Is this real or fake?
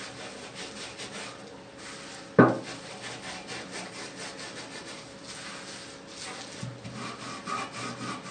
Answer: real